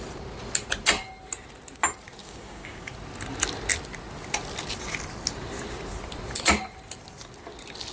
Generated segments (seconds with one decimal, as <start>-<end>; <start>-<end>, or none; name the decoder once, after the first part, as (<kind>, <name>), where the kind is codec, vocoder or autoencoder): 2.2-2.9 (codec, DAC)